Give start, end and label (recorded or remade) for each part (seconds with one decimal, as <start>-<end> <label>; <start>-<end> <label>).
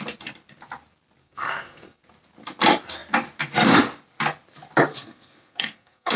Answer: 0.0-1.2 recorded; 1.2-2.0 remade; 2.0-4.9 recorded; 4.9-6.2 remade